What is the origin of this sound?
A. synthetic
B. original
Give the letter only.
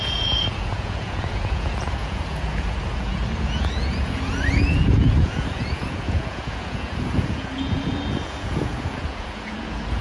A